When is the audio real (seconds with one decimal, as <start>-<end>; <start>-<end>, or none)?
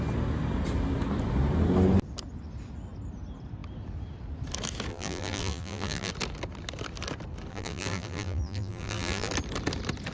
0.0-4.9; 6.1-7.5; 9.3-10.1